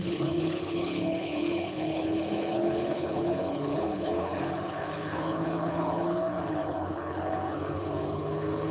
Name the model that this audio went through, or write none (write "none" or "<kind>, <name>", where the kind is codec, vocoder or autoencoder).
codec, HILCodec